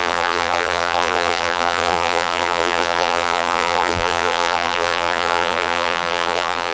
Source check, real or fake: fake